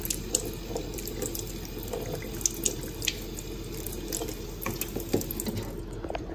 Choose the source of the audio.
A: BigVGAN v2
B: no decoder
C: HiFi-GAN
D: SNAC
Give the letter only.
B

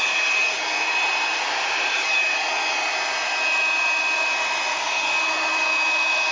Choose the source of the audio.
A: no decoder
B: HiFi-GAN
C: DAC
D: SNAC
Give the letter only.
A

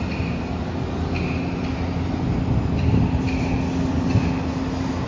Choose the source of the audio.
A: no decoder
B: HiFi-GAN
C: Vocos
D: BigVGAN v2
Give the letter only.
A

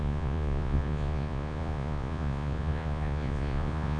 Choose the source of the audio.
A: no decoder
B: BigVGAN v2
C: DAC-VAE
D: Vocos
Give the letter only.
D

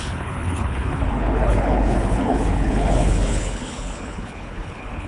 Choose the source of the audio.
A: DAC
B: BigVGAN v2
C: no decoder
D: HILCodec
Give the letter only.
D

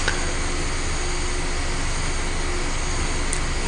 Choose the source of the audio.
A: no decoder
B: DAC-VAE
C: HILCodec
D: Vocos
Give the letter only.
A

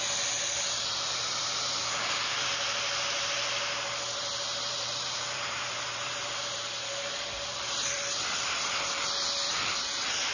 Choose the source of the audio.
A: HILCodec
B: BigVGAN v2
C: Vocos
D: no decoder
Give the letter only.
B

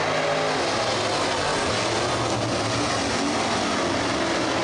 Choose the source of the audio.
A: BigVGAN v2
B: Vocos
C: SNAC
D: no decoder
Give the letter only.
D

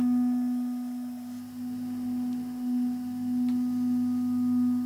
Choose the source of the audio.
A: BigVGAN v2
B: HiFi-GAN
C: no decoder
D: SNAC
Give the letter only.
C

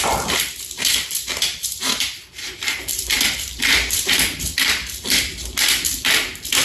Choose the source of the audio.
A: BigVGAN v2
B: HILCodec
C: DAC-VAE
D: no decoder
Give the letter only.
A